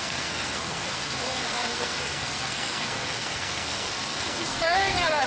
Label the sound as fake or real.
fake